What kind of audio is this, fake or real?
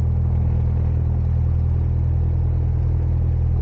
real